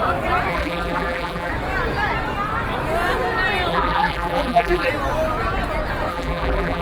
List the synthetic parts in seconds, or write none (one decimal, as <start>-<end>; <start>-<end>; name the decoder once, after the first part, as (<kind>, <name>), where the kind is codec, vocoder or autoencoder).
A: 0.5-1.5 (vocoder, BigVGAN v2); 3.7-4.9; 6.1-6.8